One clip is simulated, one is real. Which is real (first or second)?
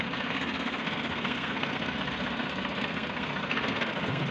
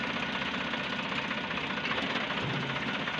second